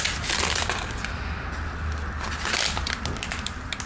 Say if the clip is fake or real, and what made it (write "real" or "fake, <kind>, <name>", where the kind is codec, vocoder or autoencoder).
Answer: real